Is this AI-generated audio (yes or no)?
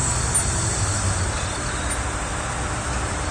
no